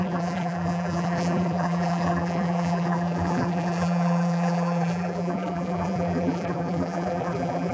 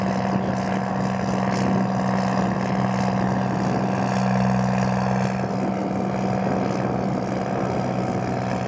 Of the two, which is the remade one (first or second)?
first